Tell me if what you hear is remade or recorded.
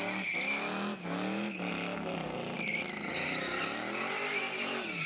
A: recorded